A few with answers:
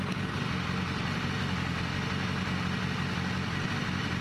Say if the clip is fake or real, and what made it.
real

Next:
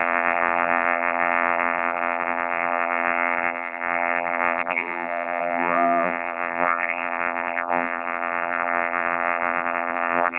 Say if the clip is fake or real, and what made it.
fake, vocoder, BigVGAN v2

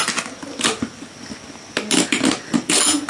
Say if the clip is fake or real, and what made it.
real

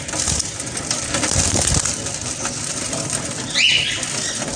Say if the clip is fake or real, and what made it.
real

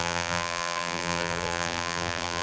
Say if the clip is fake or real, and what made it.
fake, vocoder, BigVGAN v2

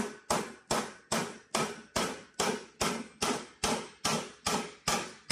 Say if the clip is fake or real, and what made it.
real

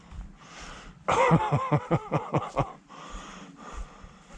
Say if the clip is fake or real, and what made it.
fake, vocoder, BigVGAN v2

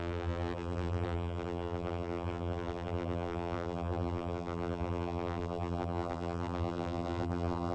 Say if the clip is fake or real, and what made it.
fake, vocoder, BigVGAN v2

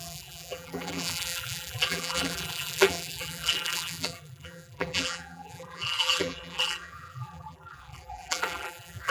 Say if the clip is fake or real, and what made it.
fake, vocoder, BigVGAN v2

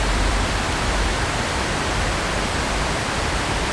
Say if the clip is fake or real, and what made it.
fake, vocoder, BigVGAN v2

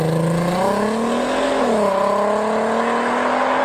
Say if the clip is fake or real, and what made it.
real